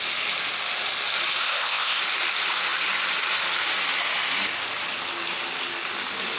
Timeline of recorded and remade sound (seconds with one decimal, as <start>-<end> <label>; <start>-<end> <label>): 0.0-1.4 recorded; 1.4-2.0 remade; 2.0-6.4 recorded

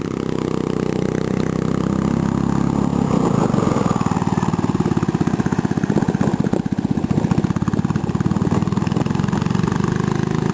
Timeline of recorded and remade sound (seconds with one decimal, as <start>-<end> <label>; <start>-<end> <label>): 0.0-10.5 recorded

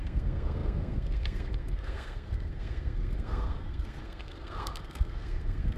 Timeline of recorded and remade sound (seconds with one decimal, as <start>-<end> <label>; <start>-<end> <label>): 0.0-5.8 remade

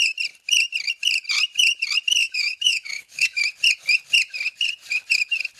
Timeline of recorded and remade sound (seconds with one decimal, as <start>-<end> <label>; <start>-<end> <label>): 0.0-2.2 recorded; 2.2-3.4 remade; 3.4-5.6 recorded